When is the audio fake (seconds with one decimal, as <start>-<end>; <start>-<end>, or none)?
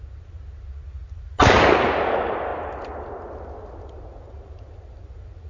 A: 2.5-3.1